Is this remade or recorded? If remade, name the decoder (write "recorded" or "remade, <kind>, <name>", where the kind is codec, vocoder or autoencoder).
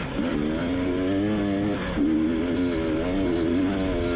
recorded